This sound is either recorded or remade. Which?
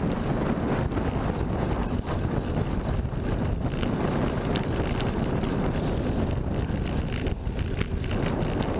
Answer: recorded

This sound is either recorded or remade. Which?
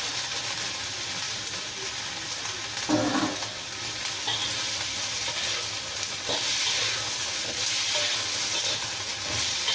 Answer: recorded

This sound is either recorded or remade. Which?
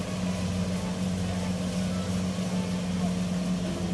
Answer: recorded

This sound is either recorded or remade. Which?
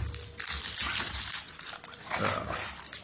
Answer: recorded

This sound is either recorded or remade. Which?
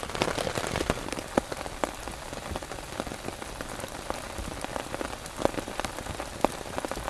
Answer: recorded